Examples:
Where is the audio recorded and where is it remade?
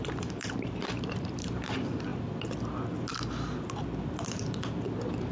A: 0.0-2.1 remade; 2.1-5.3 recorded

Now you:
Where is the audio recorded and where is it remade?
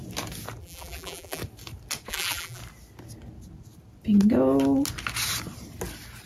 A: 0.0-0.6 recorded; 0.6-1.4 remade; 1.4-2.1 recorded; 2.1-2.6 remade; 2.6-6.3 recorded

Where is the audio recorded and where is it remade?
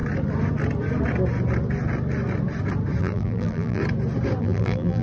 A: 0.0-3.0 recorded; 3.0-3.8 remade; 3.8-4.4 recorded; 4.4-5.0 remade